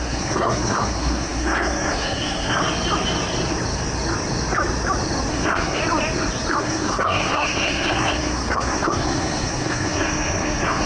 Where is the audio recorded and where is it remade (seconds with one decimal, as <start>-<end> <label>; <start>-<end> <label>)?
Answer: 0.0-2.6 remade; 2.6-5.3 recorded; 5.3-5.8 remade; 5.8-6.6 recorded; 6.6-10.9 remade